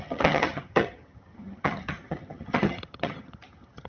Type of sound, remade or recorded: remade